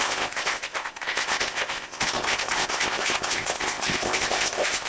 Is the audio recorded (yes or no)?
no